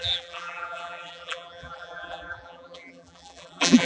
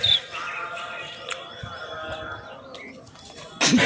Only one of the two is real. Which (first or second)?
second